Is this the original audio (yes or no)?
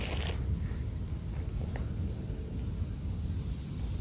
yes